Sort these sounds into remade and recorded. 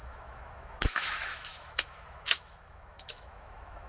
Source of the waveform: remade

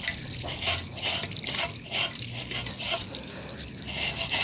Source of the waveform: recorded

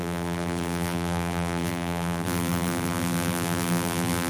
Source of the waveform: remade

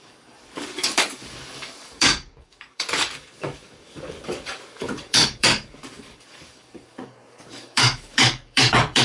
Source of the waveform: remade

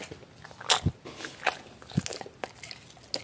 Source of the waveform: recorded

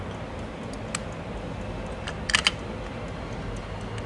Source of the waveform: recorded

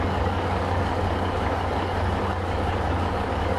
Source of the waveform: remade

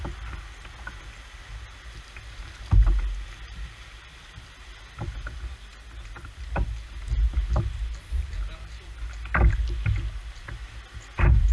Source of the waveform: recorded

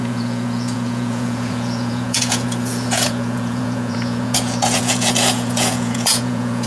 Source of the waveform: remade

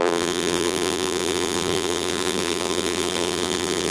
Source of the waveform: remade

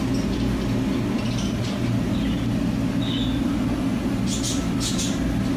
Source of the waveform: recorded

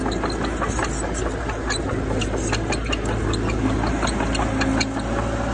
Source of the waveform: recorded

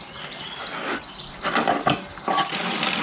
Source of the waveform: recorded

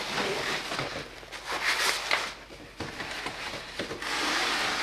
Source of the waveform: recorded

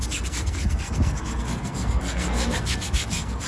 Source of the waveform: remade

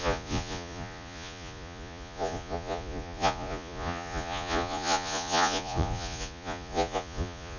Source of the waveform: remade